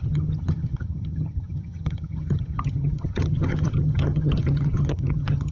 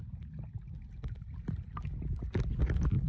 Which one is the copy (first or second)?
first